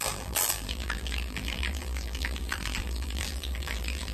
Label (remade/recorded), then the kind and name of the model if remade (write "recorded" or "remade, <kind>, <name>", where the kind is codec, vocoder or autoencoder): remade, vocoder, BigVGAN v2